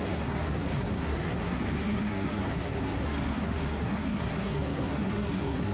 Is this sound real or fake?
fake